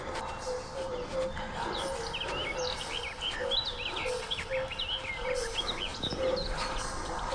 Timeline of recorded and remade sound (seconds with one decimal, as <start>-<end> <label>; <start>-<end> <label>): 0.0-7.3 recorded